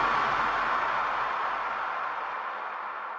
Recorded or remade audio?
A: recorded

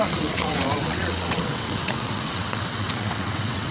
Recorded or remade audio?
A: remade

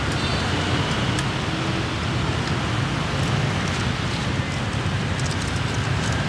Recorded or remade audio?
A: recorded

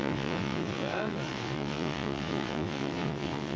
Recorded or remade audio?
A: remade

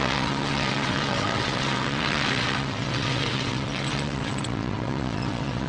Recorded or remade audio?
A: remade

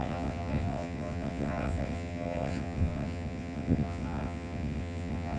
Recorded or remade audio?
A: remade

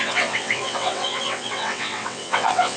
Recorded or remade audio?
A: remade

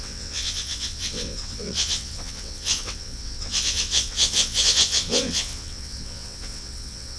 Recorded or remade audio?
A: remade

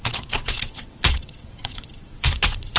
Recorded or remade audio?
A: remade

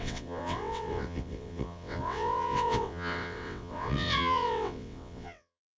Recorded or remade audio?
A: remade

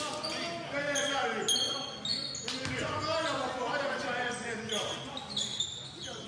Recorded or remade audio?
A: recorded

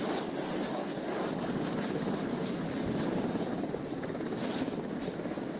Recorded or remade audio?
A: recorded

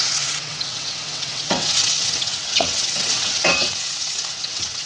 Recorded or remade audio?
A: remade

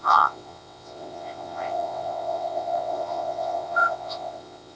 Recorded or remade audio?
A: remade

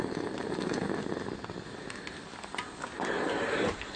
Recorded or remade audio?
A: recorded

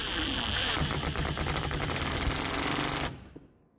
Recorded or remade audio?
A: recorded